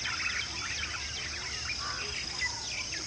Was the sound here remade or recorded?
recorded